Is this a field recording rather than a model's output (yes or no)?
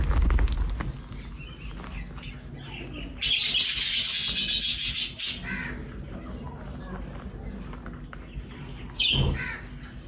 yes